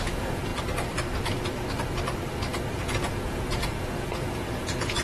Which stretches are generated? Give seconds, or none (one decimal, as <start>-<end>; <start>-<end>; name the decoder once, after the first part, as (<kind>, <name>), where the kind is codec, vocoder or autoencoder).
0.0-0.5 (vocoder, Vocos); 2.7-5.0